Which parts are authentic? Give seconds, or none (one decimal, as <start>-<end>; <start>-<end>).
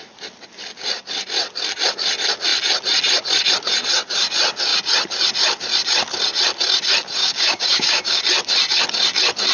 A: 0.0-7.2; 8.2-9.5